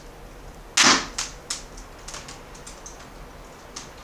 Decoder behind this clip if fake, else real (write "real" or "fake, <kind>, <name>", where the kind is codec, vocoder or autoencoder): real